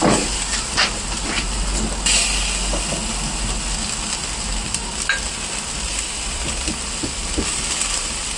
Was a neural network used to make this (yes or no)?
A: no